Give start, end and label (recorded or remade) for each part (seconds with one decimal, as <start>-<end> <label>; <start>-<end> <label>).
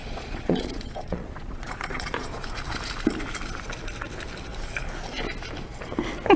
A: 0.0-2.4 remade; 2.4-6.4 recorded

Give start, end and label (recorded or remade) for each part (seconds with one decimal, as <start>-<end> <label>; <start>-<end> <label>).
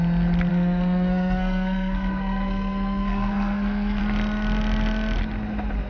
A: 0.0-0.5 recorded; 0.5-4.0 remade; 4.0-5.9 recorded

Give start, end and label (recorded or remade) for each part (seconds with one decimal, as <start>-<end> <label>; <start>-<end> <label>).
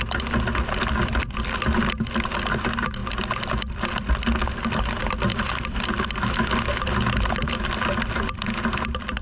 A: 0.0-5.3 recorded; 5.3-6.3 remade; 6.3-9.2 recorded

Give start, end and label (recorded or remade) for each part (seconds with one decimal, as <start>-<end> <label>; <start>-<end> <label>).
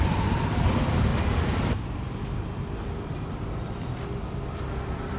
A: 0.0-1.1 remade; 1.1-4.2 recorded; 4.2-5.2 remade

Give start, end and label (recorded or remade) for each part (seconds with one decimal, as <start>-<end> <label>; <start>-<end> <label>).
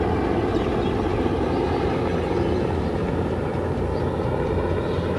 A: 0.0-5.2 recorded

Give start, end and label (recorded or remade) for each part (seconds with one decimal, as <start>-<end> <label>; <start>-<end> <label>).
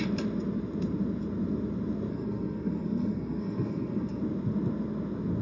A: 0.0-2.1 recorded; 2.1-4.2 remade; 4.2-5.4 recorded